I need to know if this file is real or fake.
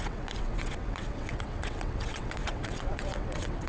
fake